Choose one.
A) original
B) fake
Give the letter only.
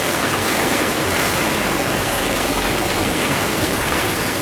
B